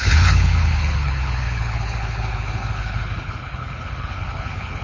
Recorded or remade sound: remade